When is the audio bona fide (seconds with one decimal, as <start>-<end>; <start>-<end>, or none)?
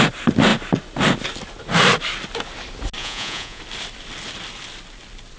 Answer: 0.0-3.0; 3.6-5.4